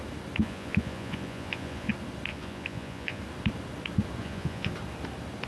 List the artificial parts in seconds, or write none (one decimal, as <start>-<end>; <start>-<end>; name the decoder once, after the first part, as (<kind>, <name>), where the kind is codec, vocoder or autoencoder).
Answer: 0.4-1.9 (vocoder, Vocos); 2.3-3.2; 4.2-4.7